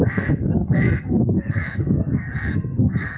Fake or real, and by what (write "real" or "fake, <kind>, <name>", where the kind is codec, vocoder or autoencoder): fake, codec, SNAC